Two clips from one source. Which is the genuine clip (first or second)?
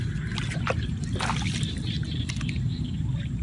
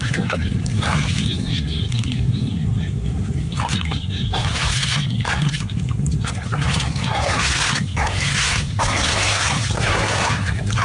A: first